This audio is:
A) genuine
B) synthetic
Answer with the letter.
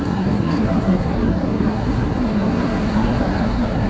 B